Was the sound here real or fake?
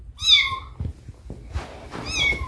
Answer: real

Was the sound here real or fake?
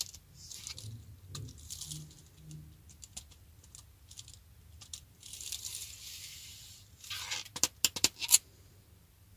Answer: real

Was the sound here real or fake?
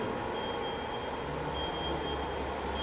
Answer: real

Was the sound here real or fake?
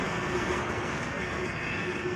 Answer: fake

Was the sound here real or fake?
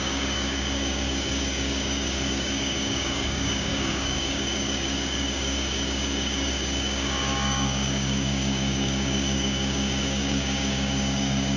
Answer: fake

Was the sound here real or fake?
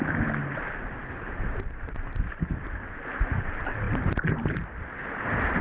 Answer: real